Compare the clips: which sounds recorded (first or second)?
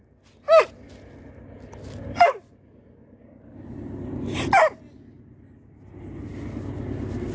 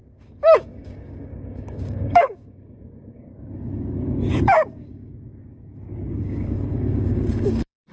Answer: first